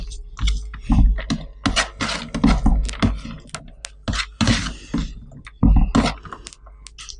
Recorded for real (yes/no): yes